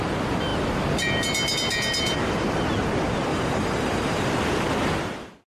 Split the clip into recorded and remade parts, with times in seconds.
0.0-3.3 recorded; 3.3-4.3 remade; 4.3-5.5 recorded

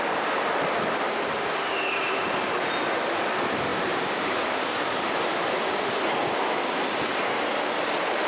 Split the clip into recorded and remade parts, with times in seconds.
0.0-8.3 remade

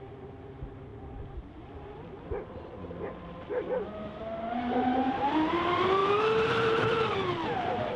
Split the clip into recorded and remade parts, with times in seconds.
0.0-8.0 recorded

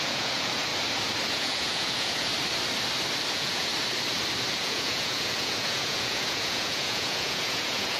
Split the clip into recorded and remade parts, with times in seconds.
0.0-0.7 remade; 0.7-1.3 recorded; 1.3-2.3 remade; 2.3-3.3 recorded; 3.3-3.7 remade; 3.7-4.5 recorded; 4.5-8.0 remade

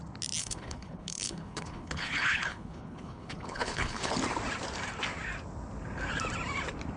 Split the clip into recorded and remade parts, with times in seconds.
0.0-0.4 recorded; 0.4-4.1 remade; 4.1-7.0 recorded

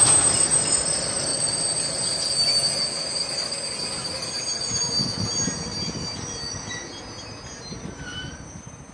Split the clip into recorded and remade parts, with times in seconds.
0.0-1.3 recorded; 1.3-1.8 remade; 1.8-8.9 recorded